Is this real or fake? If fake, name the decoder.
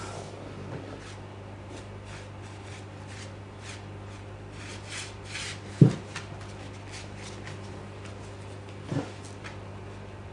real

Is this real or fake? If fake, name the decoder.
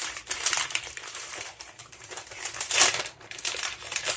fake, vocoder, BigVGAN v2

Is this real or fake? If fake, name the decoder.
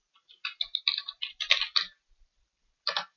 real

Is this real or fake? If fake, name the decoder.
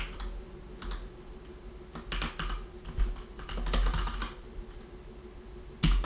real